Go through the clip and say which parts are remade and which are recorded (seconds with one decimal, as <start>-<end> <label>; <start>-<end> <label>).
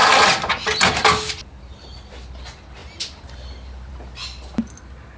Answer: 0.0-5.2 recorded